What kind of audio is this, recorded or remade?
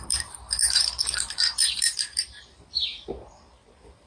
remade